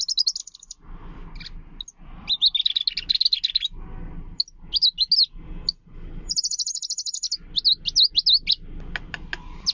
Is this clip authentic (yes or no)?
yes